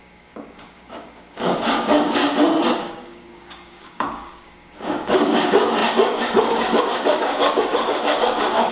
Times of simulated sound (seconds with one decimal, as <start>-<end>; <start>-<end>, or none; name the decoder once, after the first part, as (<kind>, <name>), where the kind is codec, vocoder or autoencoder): 0.0-2.2 (codec, DAC); 2.8-8.7